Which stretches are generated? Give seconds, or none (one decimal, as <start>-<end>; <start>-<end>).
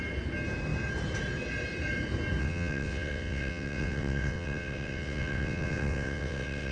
2.4-6.7